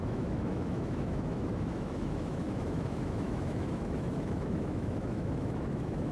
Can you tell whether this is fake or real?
fake